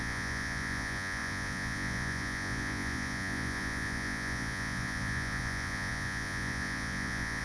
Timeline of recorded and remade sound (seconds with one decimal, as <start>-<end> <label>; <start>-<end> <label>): 0.0-7.4 remade